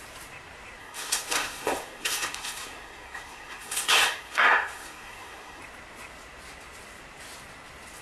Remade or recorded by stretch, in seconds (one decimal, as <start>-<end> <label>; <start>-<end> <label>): 0.0-0.8 recorded; 0.8-5.6 remade; 5.6-8.0 recorded